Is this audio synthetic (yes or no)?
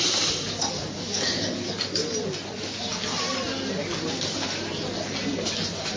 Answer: no